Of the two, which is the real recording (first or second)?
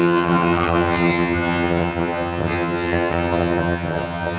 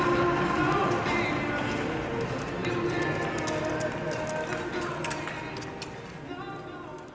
second